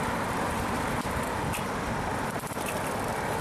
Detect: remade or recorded recorded